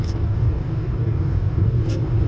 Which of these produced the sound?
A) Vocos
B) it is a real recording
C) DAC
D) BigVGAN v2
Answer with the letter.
C